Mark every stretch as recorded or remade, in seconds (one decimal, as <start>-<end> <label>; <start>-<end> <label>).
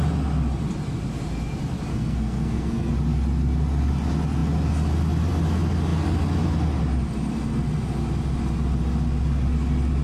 0.0-1.9 recorded; 1.9-2.9 remade; 2.9-10.0 recorded